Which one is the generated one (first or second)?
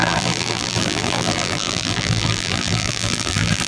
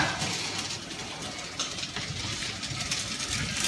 first